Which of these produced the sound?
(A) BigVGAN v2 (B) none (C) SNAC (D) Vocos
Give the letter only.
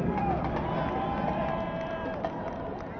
B